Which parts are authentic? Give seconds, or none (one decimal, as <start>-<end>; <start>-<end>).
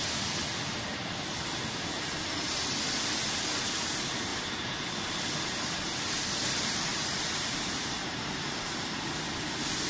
0.0-0.9; 1.4-6.9; 9.4-9.9